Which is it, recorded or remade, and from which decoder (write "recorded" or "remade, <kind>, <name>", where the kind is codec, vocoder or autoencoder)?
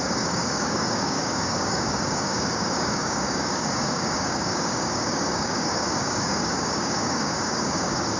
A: remade, codec, DAC